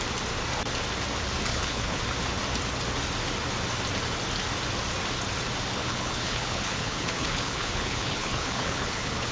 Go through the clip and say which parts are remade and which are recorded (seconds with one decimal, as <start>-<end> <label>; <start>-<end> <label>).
0.0-1.5 recorded; 1.5-2.0 remade; 2.0-5.8 recorded; 5.8-9.3 remade

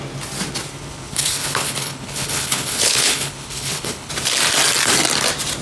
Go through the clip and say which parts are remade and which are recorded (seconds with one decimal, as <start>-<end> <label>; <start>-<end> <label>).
0.0-0.7 recorded; 0.7-4.1 remade; 4.1-5.6 recorded

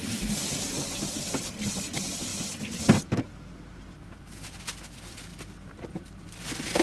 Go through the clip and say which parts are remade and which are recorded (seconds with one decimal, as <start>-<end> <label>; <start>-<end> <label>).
0.0-6.8 recorded

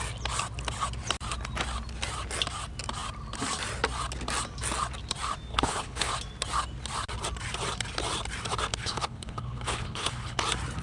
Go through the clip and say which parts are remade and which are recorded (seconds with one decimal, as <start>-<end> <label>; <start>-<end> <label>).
0.0-5.5 recorded; 5.5-6.1 remade; 6.1-8.7 recorded; 8.7-10.4 remade; 10.4-10.8 recorded

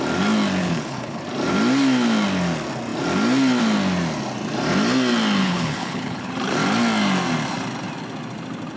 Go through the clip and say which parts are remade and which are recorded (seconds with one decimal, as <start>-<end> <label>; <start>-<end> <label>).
0.0-0.6 recorded; 0.6-1.2 remade; 1.2-5.4 recorded; 5.4-6.3 remade; 6.3-8.8 recorded

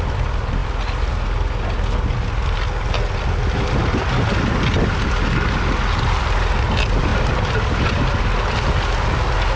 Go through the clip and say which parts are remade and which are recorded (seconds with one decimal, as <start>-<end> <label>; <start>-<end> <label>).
0.0-9.6 recorded

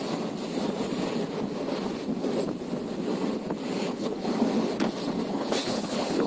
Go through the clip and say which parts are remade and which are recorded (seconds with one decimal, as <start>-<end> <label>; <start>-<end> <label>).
0.0-3.8 recorded; 3.8-4.3 remade; 4.3-5.3 recorded; 5.3-6.3 remade

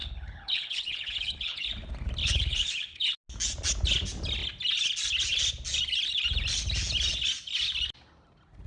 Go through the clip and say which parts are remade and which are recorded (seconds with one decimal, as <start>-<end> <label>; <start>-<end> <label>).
0.0-1.7 remade; 1.7-2.2 recorded; 2.2-3.1 remade; 3.1-8.7 recorded